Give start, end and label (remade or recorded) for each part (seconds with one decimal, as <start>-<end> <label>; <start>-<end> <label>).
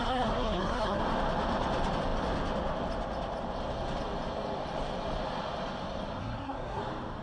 0.0-1.0 remade; 1.0-6.2 recorded; 6.2-6.8 remade; 6.8-7.2 recorded